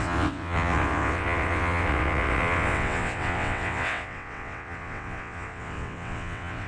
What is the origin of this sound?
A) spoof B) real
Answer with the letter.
A